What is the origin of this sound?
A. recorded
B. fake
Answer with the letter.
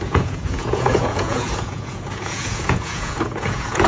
B